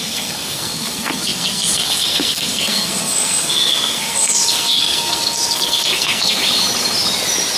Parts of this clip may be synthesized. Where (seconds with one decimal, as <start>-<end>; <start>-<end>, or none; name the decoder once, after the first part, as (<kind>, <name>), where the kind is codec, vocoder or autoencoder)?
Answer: 0.0-6.4 (codec, SNAC)